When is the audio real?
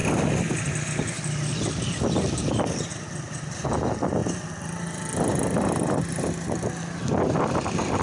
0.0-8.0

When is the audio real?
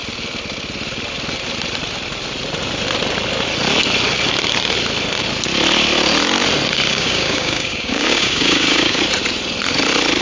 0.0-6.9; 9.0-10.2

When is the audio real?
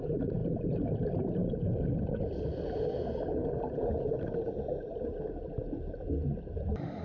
0.0-7.0